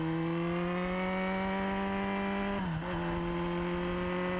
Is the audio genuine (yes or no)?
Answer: yes